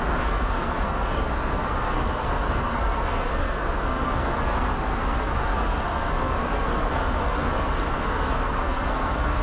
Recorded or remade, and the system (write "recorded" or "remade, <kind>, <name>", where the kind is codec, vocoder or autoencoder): remade, codec, SNAC